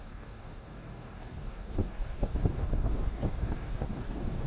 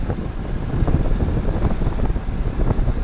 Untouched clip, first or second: second